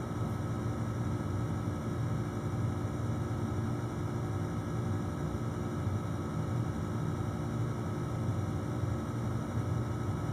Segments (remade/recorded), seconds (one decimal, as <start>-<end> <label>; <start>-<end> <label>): 0.0-10.3 recorded